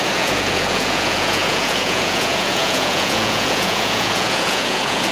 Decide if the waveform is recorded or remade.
remade